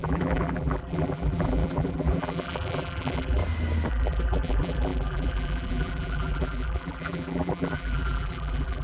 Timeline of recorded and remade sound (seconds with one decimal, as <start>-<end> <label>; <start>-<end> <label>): 0.0-3.4 remade; 3.4-3.9 recorded; 3.9-8.8 remade